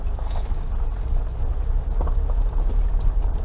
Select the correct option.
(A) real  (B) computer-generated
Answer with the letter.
A